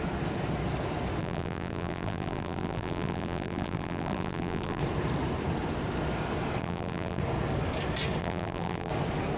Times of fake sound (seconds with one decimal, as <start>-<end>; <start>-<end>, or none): 1.2-4.8; 6.6-7.2; 8.2-8.9